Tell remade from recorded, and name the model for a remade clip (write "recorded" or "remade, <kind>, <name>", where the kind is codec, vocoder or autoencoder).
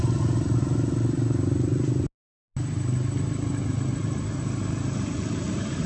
recorded